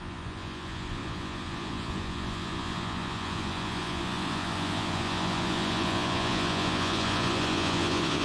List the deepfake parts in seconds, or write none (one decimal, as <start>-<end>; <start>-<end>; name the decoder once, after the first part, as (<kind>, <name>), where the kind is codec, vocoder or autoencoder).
0.0-8.2 (vocoder, Vocos)